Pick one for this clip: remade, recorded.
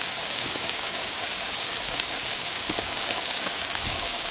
remade